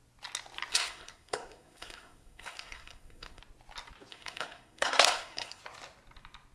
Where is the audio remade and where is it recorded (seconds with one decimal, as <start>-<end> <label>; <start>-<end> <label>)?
0.0-0.7 recorded; 0.7-3.4 remade; 3.4-4.1 recorded; 4.1-5.6 remade; 5.6-6.5 recorded